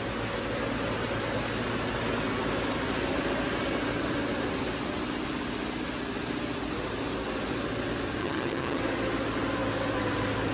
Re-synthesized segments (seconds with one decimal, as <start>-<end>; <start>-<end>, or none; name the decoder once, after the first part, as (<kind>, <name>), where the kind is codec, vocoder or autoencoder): 8.2-8.8 (vocoder, HiFi-GAN)